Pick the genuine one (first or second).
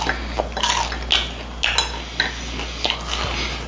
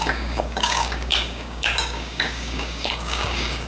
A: first